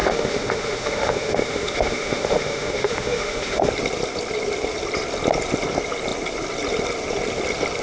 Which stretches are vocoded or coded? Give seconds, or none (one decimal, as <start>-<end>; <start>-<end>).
0.0-3.7